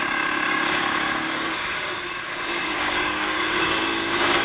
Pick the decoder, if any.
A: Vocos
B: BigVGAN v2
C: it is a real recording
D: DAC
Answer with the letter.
D